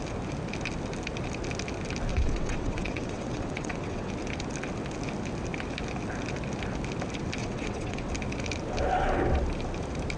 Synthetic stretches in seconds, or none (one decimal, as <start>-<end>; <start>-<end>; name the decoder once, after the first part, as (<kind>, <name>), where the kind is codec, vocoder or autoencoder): 2.1-4.1 (vocoder, WaveNeXt); 7.4-8.1